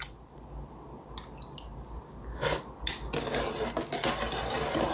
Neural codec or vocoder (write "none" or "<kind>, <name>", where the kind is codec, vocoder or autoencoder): none